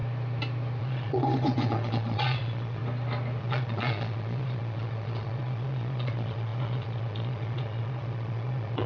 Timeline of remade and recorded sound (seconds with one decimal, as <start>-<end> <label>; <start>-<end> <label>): 0.0-0.8 recorded; 0.8-2.8 remade; 2.8-3.4 recorded; 3.4-8.9 remade